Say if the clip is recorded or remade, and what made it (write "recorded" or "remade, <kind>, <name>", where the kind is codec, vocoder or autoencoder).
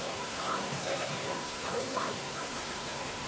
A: remade, codec, SNAC